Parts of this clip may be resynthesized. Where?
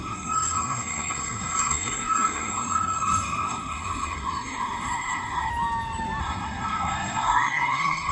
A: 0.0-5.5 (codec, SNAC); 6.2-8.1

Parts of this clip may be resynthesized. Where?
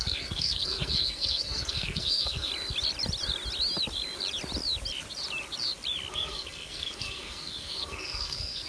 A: 0.0-2.5 (codec, SNAC); 6.1-8.7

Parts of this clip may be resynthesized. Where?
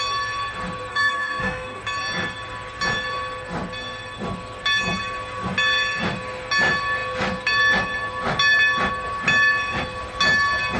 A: 0.9-1.8 (codec, SNAC)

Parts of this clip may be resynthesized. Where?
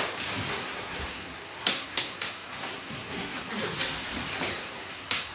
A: 0.5-3.5 (codec, SNAC); 4.5-5.3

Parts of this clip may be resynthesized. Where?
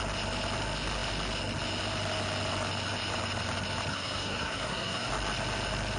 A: 3.9-5.1 (codec, SNAC)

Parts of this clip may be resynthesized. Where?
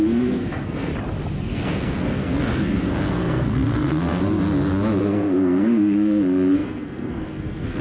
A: 0.0-0.9 (codec, SNAC); 1.4-4.2; 5.0-7.8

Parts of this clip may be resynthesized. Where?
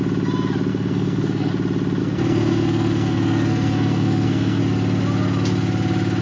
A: 0.7-1.5 (codec, SNAC); 2.0-4.6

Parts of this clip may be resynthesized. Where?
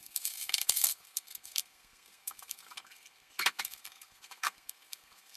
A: 0.0-5.4 (codec, SNAC)